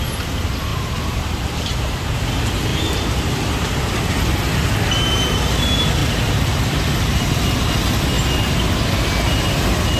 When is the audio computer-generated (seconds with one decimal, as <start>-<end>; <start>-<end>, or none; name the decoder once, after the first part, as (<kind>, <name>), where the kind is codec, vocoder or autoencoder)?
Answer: 0.7-2.2 (vocoder, BigVGAN v2); 2.7-3.9; 6.0-7.2